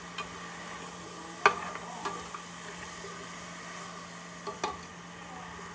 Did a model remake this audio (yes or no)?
no